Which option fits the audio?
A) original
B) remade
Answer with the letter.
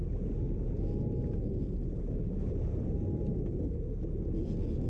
A